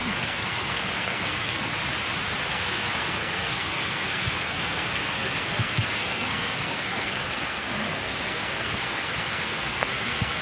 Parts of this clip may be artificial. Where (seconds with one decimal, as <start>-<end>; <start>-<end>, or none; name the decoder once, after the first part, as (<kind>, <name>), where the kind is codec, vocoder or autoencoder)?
0.0-1.7 (codec, SNAC); 2.5-10.4